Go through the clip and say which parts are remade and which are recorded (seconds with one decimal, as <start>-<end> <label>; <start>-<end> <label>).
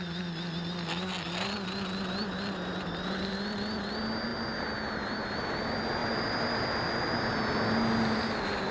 0.0-8.7 recorded